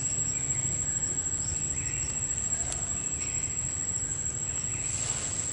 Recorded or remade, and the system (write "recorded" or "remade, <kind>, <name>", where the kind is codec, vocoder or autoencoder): recorded